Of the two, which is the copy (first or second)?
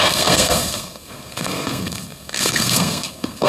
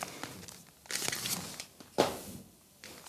first